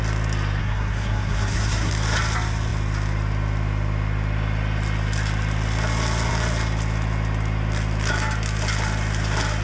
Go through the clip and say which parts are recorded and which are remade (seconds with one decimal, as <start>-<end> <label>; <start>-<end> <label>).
0.0-0.6 recorded; 0.6-1.9 remade; 1.9-9.6 recorded